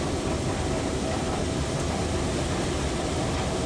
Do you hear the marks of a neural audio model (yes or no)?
no